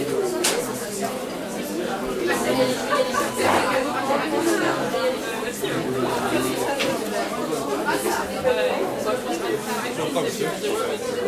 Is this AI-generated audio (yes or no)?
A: no